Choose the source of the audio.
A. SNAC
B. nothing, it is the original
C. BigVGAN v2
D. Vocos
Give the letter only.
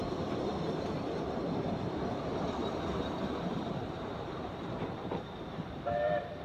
C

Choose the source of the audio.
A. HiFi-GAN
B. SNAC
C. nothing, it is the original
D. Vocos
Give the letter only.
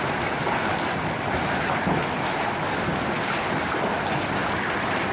C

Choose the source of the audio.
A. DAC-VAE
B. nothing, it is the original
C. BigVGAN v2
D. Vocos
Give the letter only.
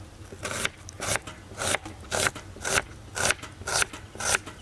B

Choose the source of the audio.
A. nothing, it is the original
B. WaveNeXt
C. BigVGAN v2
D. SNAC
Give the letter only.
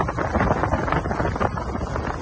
A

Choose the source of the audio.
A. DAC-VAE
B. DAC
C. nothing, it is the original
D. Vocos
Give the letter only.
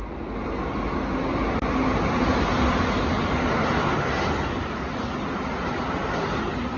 C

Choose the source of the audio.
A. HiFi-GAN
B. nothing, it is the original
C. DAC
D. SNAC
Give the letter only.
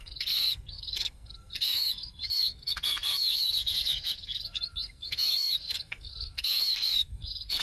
D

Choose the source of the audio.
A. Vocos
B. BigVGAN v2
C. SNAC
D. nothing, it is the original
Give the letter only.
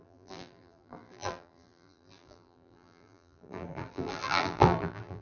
B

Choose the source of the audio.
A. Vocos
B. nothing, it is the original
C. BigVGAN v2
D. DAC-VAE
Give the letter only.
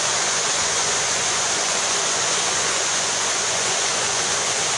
A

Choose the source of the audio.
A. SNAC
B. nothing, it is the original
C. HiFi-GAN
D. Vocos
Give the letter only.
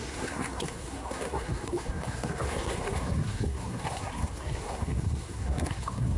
A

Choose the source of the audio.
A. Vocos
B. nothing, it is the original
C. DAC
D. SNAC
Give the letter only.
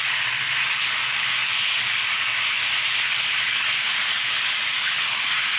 B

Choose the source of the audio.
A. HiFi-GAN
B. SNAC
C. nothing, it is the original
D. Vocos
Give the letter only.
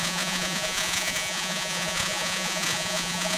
D